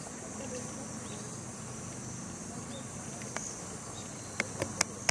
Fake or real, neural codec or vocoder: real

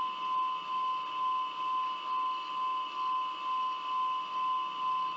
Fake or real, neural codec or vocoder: real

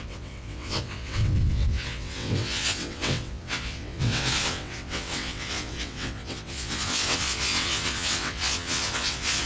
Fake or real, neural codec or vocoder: fake, vocoder, WaveNeXt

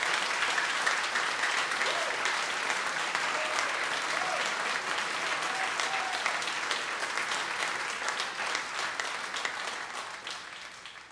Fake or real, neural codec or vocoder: real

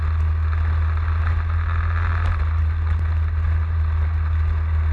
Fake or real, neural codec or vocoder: real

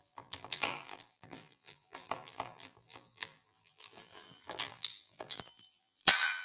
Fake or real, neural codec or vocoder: fake, vocoder, BigVGAN v2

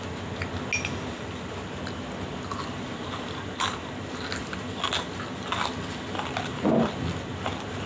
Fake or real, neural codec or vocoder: real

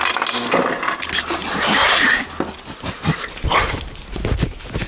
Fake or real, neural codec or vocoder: real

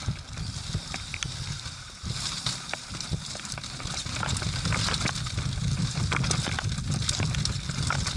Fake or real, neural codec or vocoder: real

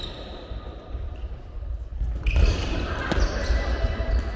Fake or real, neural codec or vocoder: fake, vocoder, BigVGAN v2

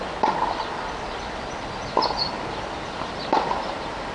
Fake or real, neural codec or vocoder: real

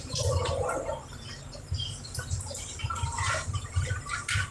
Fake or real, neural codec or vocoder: fake, vocoder, BigVGAN v2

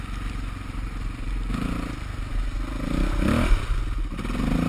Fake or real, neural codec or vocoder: real